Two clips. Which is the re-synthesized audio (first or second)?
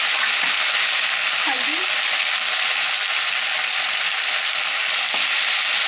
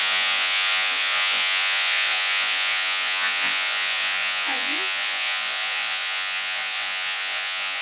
second